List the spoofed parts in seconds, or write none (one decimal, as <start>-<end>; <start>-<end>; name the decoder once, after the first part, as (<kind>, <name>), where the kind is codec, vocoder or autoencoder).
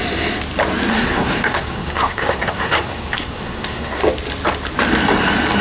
0.9-4.0 (codec, SNAC)